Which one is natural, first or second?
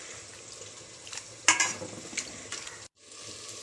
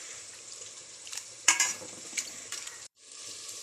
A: first